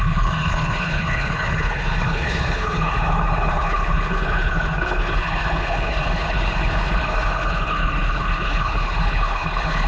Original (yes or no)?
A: no